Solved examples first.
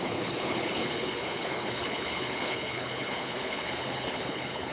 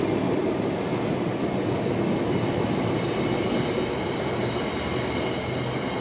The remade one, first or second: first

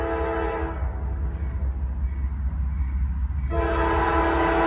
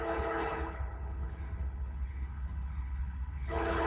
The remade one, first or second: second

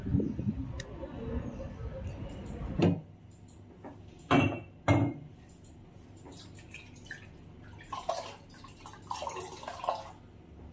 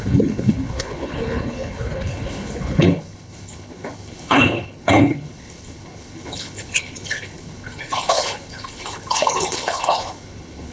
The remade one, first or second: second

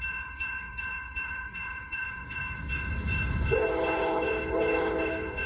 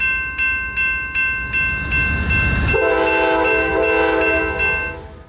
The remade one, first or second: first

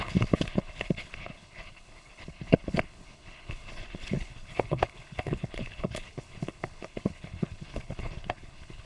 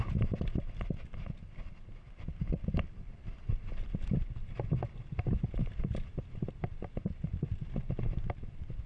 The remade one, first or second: first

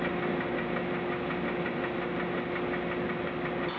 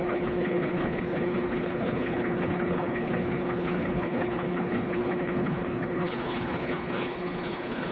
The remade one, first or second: second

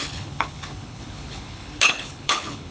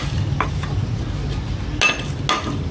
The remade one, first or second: first